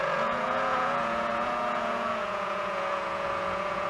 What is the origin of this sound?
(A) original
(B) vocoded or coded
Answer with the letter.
B